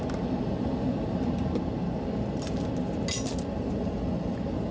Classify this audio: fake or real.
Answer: real